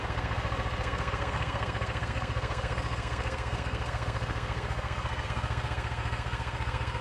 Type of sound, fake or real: fake